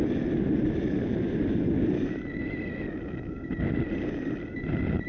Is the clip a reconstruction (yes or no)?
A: no